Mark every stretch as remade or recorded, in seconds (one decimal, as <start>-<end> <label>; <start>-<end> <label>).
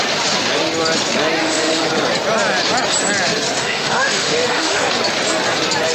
0.0-1.4 recorded; 1.4-1.9 remade; 1.9-3.6 recorded; 3.6-4.9 remade; 4.9-5.9 recorded